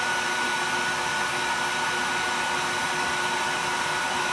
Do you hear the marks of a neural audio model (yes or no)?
no